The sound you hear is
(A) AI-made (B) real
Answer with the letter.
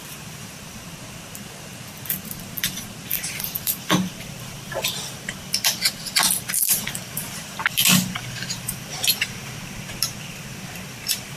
B